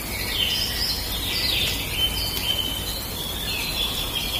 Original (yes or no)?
yes